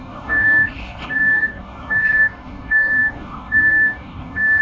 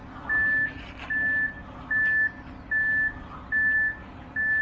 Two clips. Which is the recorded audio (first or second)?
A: second